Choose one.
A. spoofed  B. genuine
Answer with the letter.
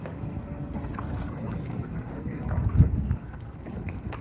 A